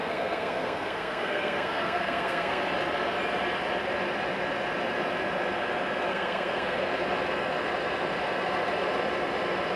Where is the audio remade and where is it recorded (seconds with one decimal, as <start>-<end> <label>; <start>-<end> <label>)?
0.0-2.6 remade; 2.6-6.1 recorded; 6.1-6.9 remade; 6.9-9.8 recorded